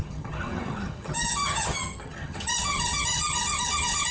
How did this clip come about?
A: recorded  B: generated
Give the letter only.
B